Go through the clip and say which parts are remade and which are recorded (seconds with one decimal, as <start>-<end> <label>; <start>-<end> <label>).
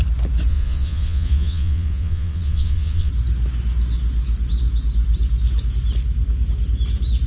0.0-0.5 recorded; 0.5-3.1 remade; 3.1-7.3 recorded